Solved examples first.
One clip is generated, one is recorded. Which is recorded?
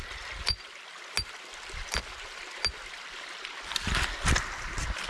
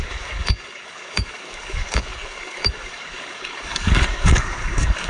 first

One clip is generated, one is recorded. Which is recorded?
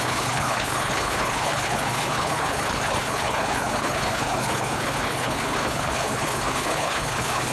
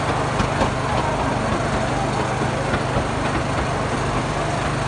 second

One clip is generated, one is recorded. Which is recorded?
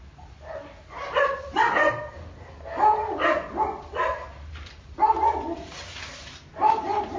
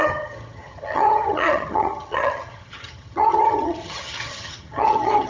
first